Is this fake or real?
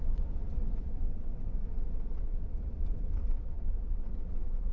fake